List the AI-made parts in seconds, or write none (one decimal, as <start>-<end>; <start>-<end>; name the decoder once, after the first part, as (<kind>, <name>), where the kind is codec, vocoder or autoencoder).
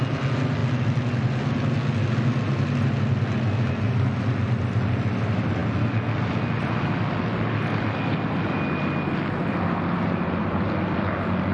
none